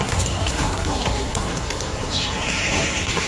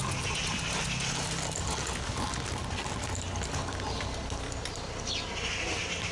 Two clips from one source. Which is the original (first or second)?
second